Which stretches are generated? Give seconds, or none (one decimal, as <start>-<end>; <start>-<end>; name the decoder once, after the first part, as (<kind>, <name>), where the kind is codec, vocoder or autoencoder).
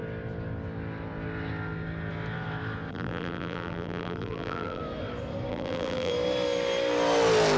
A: 2.9-4.8 (vocoder, BigVGAN v2); 5.5-6.1